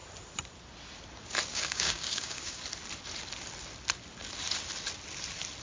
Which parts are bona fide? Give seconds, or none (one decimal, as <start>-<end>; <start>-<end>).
0.0-1.5; 2.6-5.6